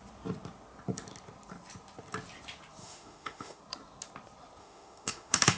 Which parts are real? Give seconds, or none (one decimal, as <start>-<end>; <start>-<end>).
0.0-2.8; 3.6-4.6